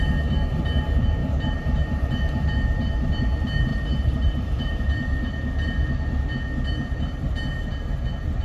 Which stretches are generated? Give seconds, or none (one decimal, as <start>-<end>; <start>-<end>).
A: 1.2-3.1; 3.7-4.8